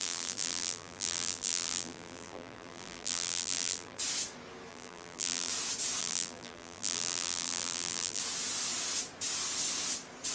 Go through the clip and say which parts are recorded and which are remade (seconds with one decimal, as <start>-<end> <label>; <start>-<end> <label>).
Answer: 0.0-4.0 remade; 4.0-4.7 recorded; 4.7-5.5 remade; 5.5-6.0 recorded; 6.0-8.2 remade; 8.2-10.3 recorded

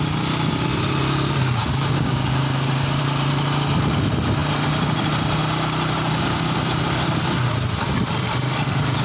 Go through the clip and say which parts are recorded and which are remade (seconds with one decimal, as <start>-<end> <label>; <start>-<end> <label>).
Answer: 0.0-1.6 recorded; 1.6-3.0 remade; 3.0-9.0 recorded

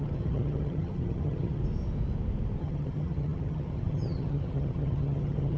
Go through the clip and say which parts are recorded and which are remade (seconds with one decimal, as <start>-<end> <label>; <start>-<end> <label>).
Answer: 0.0-1.6 remade; 1.6-2.6 recorded; 2.6-5.6 remade

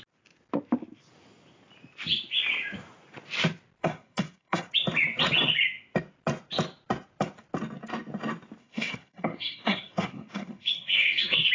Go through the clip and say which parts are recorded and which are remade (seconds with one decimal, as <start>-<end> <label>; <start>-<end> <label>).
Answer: 0.0-3.8 recorded; 3.8-4.7 remade; 4.7-8.6 recorded; 8.6-11.5 remade

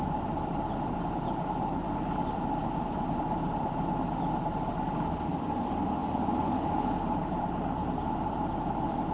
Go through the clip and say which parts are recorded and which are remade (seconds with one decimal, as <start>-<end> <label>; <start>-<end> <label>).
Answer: 0.0-6.0 remade; 6.0-7.2 recorded; 7.2-9.1 remade

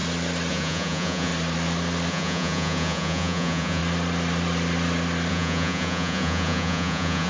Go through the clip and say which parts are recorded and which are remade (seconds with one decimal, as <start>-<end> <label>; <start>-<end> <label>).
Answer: 0.0-0.5 recorded; 0.5-1.3 remade; 1.3-2.1 recorded; 2.1-3.8 remade; 3.8-5.3 recorded; 5.3-7.3 remade

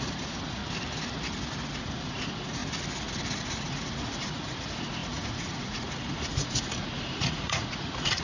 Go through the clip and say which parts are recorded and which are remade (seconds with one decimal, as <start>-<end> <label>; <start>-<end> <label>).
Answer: 0.0-0.6 remade; 0.6-1.8 recorded; 1.8-2.6 remade; 2.6-3.4 recorded; 3.4-8.2 remade

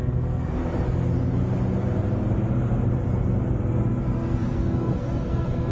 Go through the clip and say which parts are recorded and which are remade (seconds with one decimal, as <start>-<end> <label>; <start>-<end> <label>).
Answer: 0.0-0.6 remade; 0.6-4.0 recorded; 4.0-5.7 remade